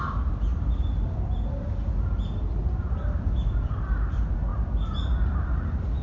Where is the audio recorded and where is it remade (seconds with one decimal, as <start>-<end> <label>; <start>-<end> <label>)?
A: 0.0-6.0 recorded